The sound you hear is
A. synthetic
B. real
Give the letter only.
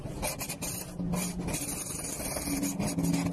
B